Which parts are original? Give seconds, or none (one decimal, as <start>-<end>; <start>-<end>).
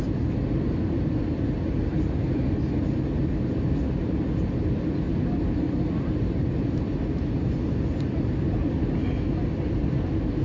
0.0-10.4